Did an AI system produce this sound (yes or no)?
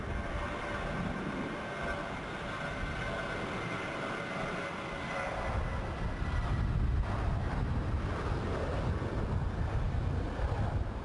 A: no